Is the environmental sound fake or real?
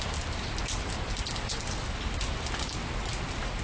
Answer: real